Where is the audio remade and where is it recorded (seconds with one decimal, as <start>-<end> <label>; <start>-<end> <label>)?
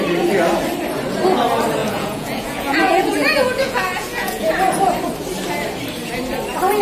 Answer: 0.0-1.8 recorded; 1.8-4.5 remade; 4.5-6.8 recorded